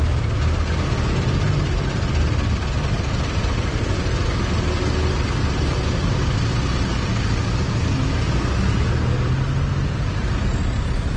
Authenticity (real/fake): real